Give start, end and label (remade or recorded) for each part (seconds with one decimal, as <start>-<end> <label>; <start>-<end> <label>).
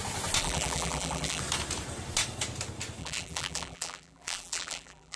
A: 0.0-0.4 recorded; 0.4-1.4 remade; 1.4-3.0 recorded; 3.0-5.2 remade